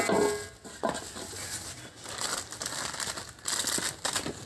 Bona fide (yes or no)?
yes